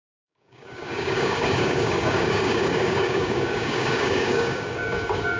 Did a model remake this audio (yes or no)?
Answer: yes